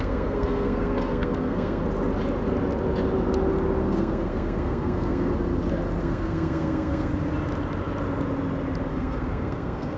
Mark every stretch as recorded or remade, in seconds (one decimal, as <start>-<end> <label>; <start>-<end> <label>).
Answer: 0.0-1.8 remade; 1.8-3.8 recorded; 3.8-5.3 remade; 5.3-6.0 recorded; 6.0-7.1 remade; 7.1-8.9 recorded; 8.9-10.0 remade